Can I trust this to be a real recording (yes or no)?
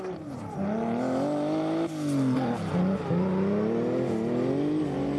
yes